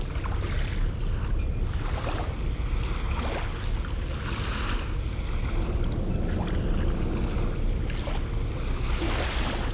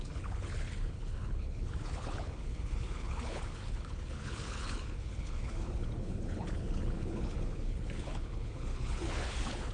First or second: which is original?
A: first